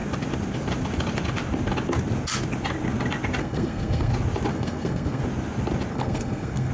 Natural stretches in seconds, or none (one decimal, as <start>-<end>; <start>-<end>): 0.0-3.4; 4.1-4.5; 5.2-5.9